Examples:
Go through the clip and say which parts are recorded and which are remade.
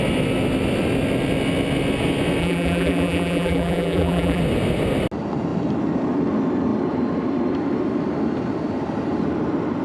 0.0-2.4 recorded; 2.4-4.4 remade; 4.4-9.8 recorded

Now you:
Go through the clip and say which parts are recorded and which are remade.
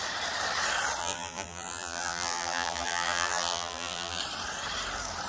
0.0-1.0 recorded; 1.0-4.2 remade; 4.2-5.3 recorded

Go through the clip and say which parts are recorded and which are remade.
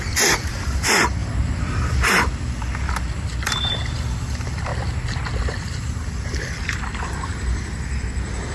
0.0-4.7 remade; 4.7-5.4 recorded; 5.4-8.5 remade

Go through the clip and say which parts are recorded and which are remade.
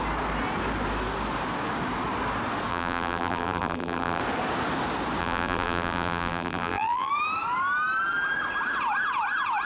0.0-2.7 recorded; 2.7-4.2 remade; 4.2-5.2 recorded; 5.2-7.1 remade; 7.1-9.6 recorded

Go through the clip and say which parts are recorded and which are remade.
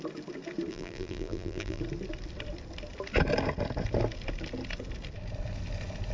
0.0-0.7 recorded; 0.7-1.8 remade; 1.8-6.1 recorded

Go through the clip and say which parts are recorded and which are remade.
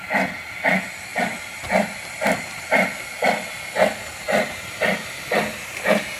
0.0-1.1 recorded; 1.1-2.4 remade; 2.4-6.2 recorded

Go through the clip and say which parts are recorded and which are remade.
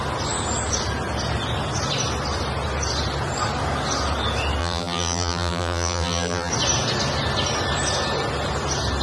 0.0-4.6 recorded; 4.6-6.5 remade; 6.5-9.0 recorded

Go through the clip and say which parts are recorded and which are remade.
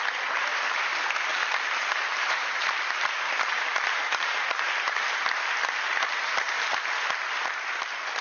0.0-1.3 recorded; 1.3-6.2 remade; 6.2-8.2 recorded